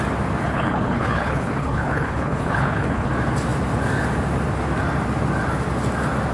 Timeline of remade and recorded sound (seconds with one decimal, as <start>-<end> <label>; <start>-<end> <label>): 0.0-0.4 recorded; 0.4-3.1 remade; 3.1-6.3 recorded